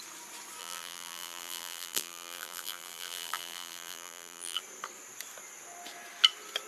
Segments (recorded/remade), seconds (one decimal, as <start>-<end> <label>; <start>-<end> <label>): 0.0-0.6 recorded; 0.6-4.6 remade; 4.6-6.7 recorded